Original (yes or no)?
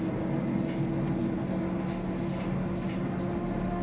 yes